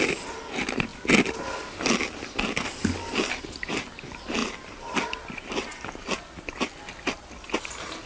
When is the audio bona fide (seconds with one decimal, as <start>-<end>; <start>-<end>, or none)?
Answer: 0.0-8.1